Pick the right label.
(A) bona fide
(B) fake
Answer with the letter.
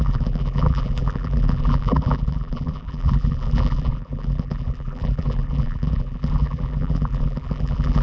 B